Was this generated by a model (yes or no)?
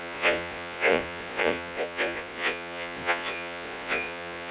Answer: yes